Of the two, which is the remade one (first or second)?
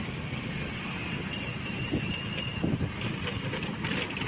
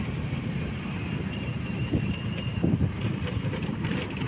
second